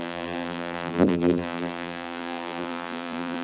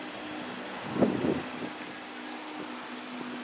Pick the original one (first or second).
second